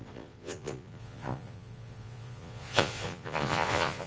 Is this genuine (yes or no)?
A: no